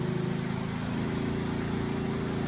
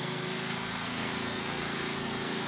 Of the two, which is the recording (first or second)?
first